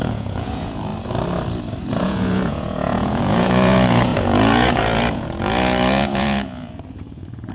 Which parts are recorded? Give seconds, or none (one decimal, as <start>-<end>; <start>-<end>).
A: 0.9-1.9